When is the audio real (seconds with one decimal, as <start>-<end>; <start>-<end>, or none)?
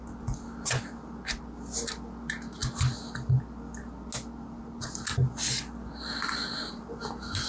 0.0-7.5